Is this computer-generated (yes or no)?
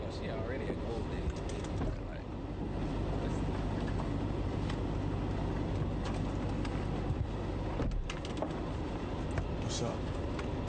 no